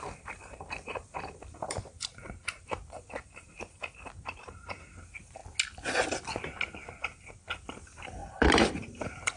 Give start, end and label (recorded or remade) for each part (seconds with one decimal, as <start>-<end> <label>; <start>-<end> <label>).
0.0-5.4 remade; 5.4-7.0 recorded; 7.0-9.4 remade